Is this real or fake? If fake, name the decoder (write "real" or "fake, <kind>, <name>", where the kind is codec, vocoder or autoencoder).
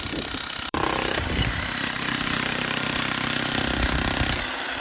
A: fake, vocoder, BigVGAN v2